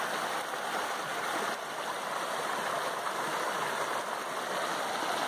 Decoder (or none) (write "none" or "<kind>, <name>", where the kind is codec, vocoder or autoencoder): none